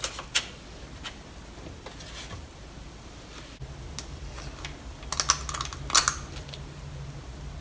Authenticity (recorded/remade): recorded